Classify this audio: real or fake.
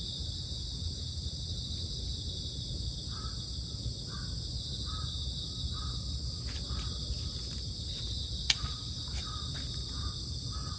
real